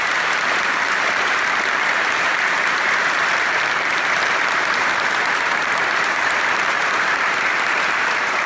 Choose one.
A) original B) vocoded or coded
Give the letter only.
B